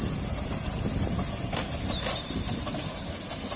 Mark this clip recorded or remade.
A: recorded